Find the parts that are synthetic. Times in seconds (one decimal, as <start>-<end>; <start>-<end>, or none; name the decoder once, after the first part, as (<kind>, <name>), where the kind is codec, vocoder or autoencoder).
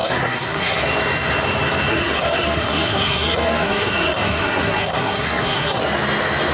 0.0-0.8 (codec, SNAC); 1.9-5.8